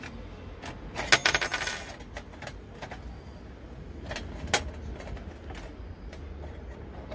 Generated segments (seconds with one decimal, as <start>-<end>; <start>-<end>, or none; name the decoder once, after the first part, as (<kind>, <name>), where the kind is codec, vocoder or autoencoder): none